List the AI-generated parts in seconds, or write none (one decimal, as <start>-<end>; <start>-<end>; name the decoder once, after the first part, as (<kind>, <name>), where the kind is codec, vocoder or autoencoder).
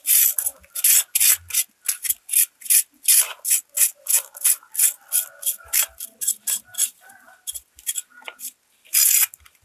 none